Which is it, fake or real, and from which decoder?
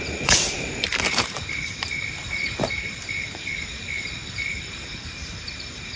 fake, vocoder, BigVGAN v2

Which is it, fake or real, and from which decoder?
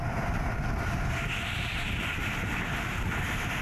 fake, vocoder, BigVGAN v2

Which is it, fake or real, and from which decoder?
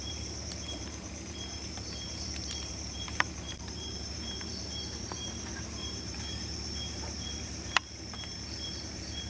fake, vocoder, BigVGAN v2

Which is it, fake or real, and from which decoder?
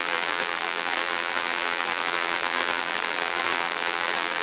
fake, vocoder, BigVGAN v2